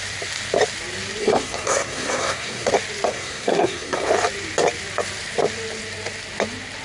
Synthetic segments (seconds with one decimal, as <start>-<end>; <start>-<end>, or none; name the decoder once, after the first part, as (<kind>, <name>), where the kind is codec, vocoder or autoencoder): 1.2-2.7 (codec, SNAC); 3.1-4.1